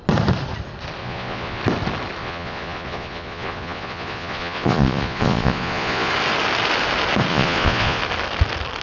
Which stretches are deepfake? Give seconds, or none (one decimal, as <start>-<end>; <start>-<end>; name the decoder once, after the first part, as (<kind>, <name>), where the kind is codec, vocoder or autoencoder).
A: 1.0-1.6 (vocoder, Vocos); 2.2-6.1; 7.3-8.0